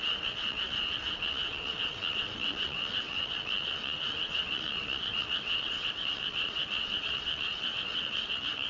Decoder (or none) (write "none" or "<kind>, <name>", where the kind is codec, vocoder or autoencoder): vocoder, WaveNeXt